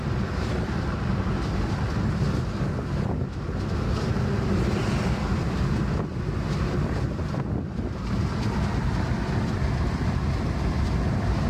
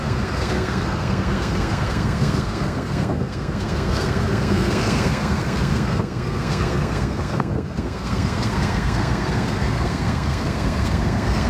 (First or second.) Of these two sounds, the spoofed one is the second